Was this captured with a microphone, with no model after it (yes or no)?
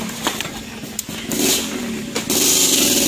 yes